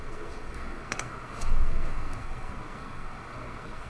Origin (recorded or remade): remade